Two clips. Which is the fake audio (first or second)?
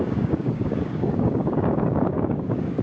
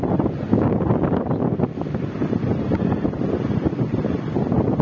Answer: first